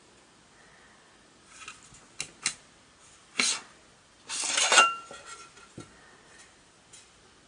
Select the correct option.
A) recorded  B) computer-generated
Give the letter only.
A